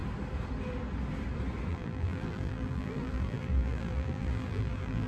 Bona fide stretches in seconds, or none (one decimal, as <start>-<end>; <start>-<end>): 0.0-1.7